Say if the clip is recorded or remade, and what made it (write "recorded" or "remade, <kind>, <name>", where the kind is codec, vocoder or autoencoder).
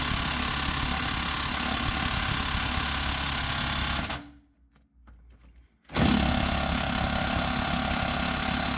recorded